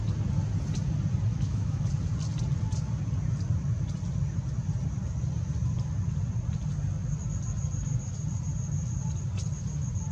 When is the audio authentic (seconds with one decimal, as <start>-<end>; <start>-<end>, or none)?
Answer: 0.0-1.3; 1.9-10.1